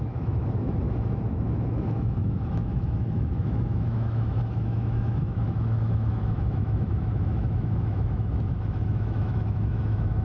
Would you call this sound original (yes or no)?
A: no